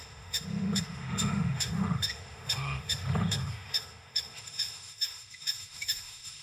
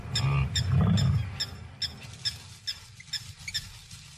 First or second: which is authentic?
second